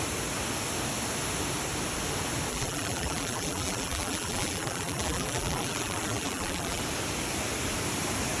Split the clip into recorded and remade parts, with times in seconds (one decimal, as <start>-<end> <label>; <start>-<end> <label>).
0.0-2.5 recorded; 2.5-6.8 remade; 6.8-8.4 recorded